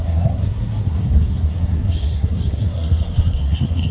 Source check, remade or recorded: remade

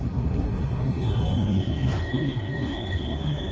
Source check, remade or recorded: remade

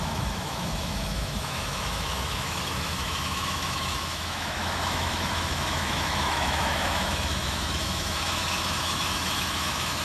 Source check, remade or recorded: remade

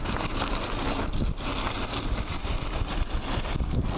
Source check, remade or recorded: recorded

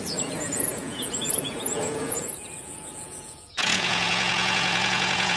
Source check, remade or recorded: remade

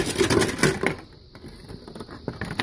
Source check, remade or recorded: recorded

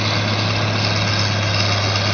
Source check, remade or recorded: recorded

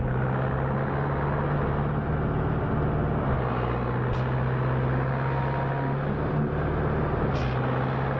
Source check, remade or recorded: recorded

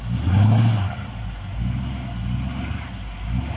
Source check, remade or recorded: recorded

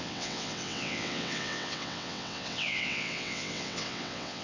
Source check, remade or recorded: remade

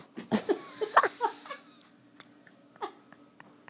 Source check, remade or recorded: recorded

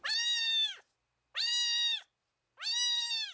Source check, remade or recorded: recorded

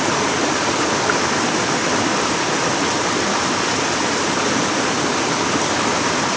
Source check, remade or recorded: recorded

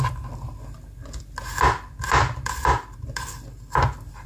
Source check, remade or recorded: recorded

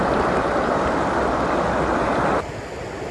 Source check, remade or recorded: recorded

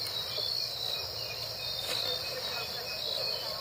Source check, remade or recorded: recorded